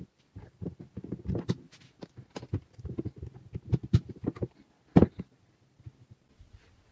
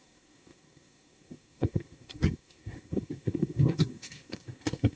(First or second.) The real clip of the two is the first